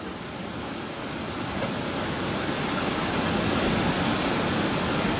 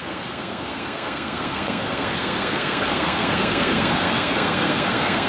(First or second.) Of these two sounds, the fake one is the second